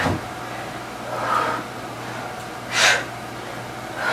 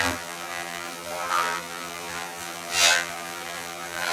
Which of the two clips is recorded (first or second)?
first